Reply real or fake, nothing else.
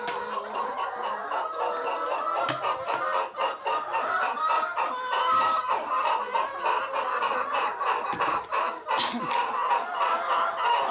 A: real